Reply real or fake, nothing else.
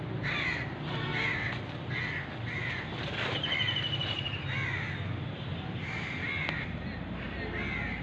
real